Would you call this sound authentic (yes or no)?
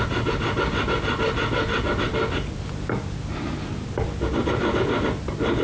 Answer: yes